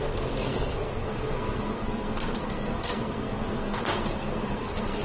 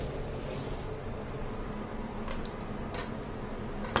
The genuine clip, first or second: second